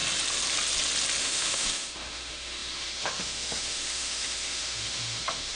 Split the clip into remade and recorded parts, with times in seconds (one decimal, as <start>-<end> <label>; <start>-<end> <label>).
0.0-1.2 recorded; 1.2-5.6 remade